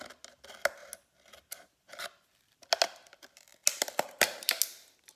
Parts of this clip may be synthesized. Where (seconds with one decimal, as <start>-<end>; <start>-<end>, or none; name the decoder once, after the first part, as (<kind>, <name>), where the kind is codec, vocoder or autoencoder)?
none